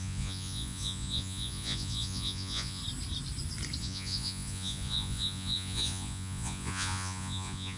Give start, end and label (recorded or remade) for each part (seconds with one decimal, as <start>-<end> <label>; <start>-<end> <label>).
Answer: 0.0-2.8 remade; 2.8-3.8 recorded; 3.8-7.8 remade